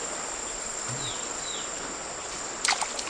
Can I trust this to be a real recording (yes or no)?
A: yes